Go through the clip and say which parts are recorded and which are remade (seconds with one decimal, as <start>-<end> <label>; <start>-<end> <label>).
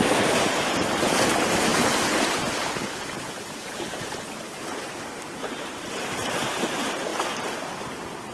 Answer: 0.0-7.1 remade; 7.1-7.8 recorded; 7.8-8.3 remade